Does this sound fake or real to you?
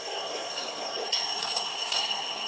fake